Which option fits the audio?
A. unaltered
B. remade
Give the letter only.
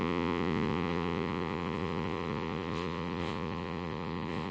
B